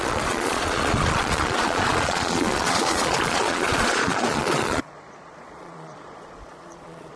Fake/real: fake